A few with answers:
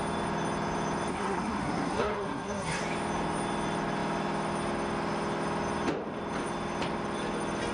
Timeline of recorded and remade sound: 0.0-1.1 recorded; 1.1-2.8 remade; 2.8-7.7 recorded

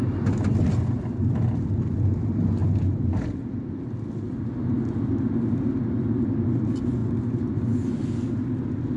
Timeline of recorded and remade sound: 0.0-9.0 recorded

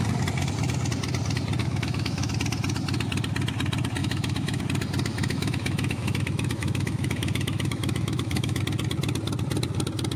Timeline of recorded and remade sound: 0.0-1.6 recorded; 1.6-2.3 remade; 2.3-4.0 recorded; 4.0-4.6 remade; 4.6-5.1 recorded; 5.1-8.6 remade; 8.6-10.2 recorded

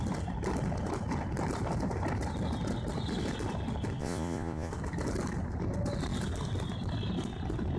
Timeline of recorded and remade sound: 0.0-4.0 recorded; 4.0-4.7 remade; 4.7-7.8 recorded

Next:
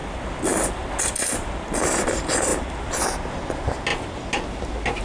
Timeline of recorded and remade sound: 0.0-5.0 recorded

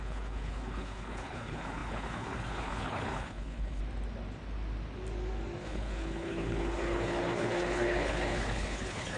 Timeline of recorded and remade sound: 0.0-3.8 remade; 3.8-5.6 recorded; 5.6-9.2 remade

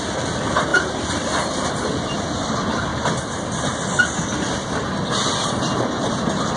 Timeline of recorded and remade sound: 0.0-6.6 recorded